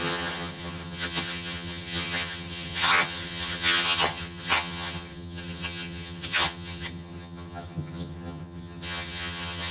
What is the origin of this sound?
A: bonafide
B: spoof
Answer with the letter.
B